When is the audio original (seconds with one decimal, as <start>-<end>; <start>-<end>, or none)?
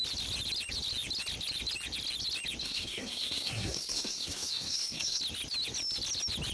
0.0-2.6; 5.2-6.5